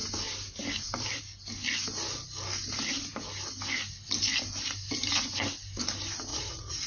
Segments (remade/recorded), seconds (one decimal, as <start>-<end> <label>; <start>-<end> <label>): 0.0-6.3 recorded; 6.3-6.9 remade